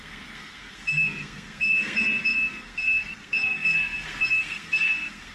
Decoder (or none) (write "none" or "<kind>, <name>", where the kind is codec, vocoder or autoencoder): codec, SNAC